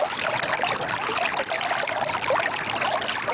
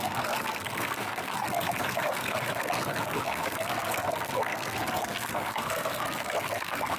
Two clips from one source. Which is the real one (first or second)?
first